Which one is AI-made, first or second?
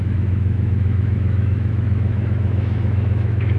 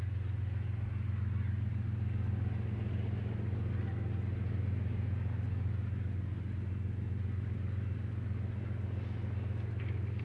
first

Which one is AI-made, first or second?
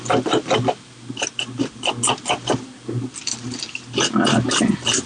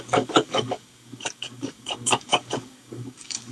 second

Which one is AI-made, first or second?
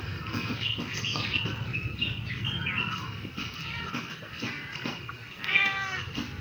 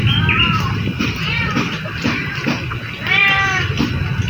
first